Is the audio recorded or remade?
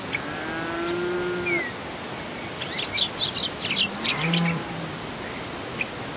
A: recorded